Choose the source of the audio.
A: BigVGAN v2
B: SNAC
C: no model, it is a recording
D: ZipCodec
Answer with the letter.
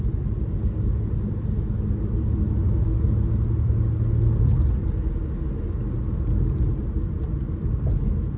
C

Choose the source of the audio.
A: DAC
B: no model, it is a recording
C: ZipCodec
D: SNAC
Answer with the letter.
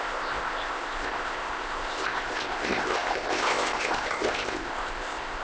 C